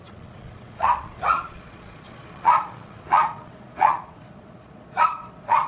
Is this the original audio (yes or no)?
no